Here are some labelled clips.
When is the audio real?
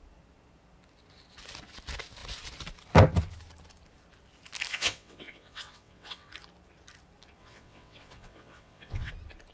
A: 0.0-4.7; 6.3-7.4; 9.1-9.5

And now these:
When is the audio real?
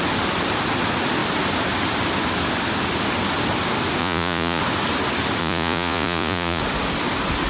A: 0.0-4.0; 4.6-5.4; 6.6-7.5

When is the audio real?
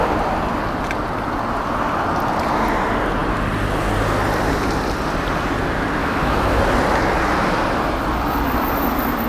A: 0.0-6.0; 6.6-9.3